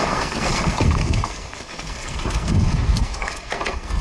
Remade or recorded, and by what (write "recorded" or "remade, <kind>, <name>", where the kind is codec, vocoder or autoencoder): remade, codec, SNAC